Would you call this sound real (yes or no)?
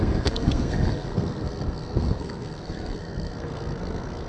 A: no